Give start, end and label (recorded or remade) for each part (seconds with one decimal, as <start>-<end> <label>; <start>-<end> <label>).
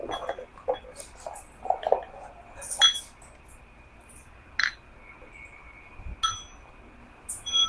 0.0-7.0 recorded; 7.0-7.7 remade